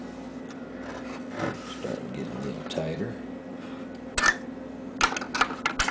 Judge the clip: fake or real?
real